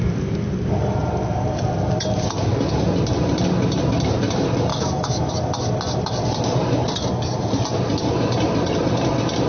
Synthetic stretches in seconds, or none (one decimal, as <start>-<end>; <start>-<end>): 4.7-5.3